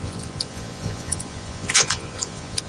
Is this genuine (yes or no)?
no